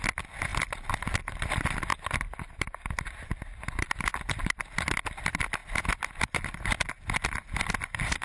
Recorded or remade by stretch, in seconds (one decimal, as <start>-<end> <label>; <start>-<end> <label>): 0.0-8.2 recorded